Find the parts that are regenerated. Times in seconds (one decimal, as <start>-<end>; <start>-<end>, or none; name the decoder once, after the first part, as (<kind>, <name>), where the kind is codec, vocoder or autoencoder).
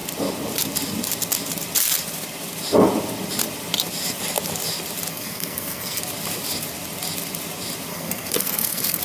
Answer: 5.1-6.0 (codec, SNAC); 7.9-9.0